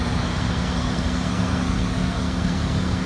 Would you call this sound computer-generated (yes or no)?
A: yes